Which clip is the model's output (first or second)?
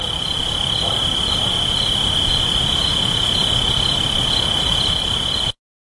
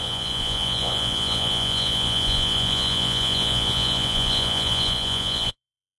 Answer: second